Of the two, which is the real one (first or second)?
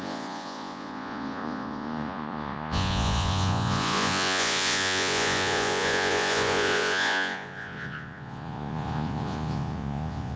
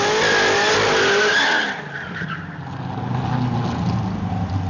second